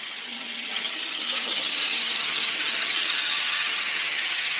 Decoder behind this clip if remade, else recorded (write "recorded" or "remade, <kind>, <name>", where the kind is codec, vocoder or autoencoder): remade, vocoder, HiFi-GAN